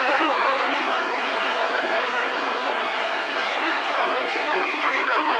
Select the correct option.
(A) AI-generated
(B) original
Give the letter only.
A